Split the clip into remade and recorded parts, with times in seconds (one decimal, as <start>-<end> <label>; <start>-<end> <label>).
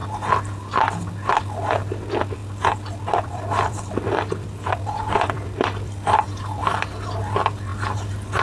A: 0.0-1.4 recorded; 1.4-7.7 remade; 7.7-8.4 recorded